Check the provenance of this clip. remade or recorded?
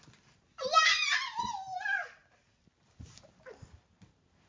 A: recorded